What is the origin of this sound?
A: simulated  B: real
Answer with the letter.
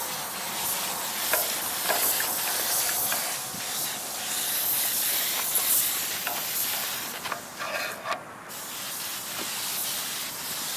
B